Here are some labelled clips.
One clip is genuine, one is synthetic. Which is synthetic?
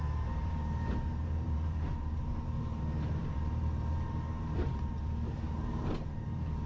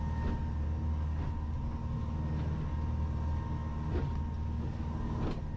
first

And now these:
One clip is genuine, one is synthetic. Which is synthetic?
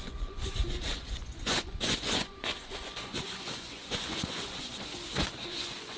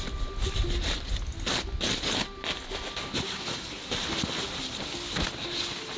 first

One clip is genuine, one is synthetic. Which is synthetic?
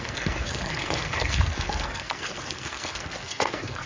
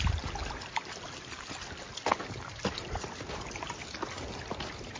first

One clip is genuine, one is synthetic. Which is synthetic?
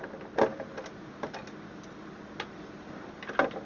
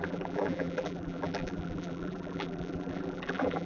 second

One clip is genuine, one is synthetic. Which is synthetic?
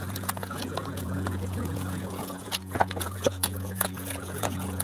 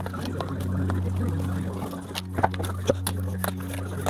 first